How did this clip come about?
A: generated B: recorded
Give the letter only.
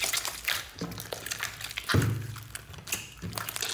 B